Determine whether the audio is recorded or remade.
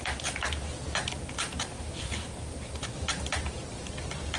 recorded